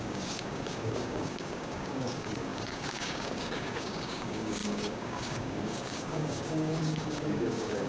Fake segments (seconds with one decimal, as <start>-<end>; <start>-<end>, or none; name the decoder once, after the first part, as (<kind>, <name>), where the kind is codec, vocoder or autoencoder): 0.0-7.9 (codec, DAC)